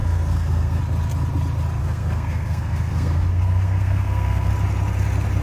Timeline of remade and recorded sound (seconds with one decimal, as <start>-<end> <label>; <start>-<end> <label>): 0.0-0.8 remade; 0.8-1.8 recorded; 1.8-4.5 remade; 4.5-5.4 recorded